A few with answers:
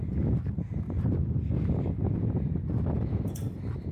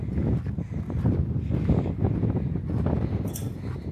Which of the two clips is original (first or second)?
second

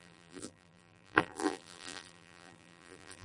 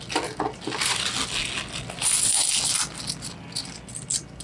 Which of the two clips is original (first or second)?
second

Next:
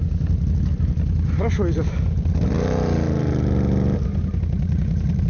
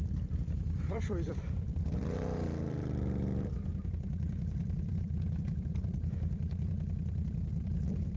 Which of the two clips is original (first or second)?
first